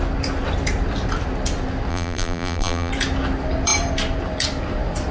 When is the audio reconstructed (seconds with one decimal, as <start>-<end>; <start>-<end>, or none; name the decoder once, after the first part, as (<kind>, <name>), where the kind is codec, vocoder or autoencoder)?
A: 1.9-2.9 (vocoder, BigVGAN v2)